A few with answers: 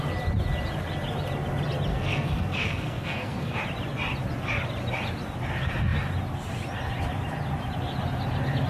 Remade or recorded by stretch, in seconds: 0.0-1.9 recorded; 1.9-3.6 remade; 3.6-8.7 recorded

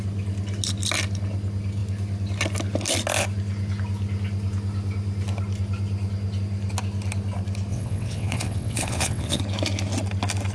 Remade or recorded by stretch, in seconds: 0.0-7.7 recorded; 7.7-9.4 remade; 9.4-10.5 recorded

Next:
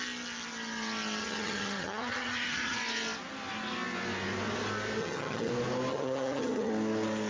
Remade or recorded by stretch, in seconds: 0.0-1.2 recorded; 1.2-2.8 remade; 2.8-5.0 recorded; 5.0-5.5 remade; 5.5-5.9 recorded; 5.9-6.7 remade; 6.7-7.3 recorded

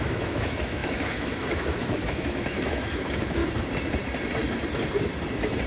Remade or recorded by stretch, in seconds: 0.0-3.4 remade; 3.4-5.7 recorded